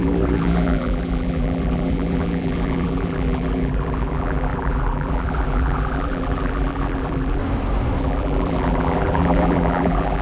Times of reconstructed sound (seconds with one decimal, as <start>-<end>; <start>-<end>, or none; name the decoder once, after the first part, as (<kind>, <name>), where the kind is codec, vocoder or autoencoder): 0.0-7.4 (vocoder, BigVGAN v2); 8.0-10.2

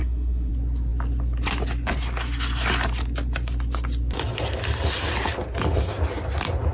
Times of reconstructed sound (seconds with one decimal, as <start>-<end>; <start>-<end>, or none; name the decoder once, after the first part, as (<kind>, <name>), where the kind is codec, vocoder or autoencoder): 0.0-0.5 (codec, SNAC)